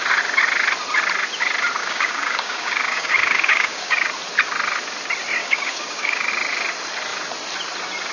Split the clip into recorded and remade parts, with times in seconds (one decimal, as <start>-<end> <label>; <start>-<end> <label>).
0.0-1.8 recorded; 1.8-4.1 remade; 4.1-5.4 recorded; 5.4-6.3 remade; 6.3-8.1 recorded